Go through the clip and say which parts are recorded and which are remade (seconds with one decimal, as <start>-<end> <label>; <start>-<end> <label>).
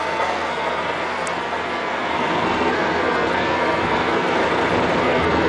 0.0-4.4 remade; 4.4-5.0 recorded; 5.0-5.5 remade